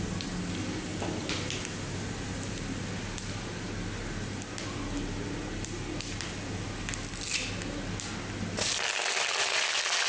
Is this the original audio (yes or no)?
yes